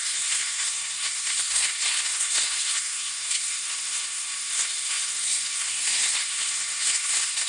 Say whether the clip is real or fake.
fake